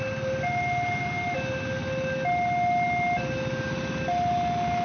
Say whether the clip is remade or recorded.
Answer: recorded